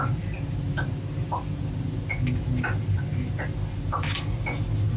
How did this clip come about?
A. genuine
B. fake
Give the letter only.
A